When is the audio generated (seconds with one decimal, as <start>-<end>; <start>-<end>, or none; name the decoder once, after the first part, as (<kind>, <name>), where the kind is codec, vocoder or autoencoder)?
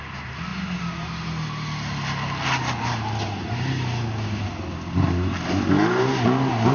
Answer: none